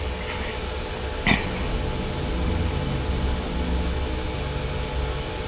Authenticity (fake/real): real